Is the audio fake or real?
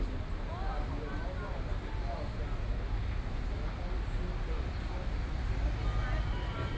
real